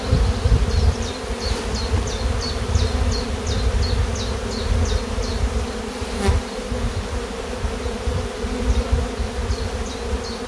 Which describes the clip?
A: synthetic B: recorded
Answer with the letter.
B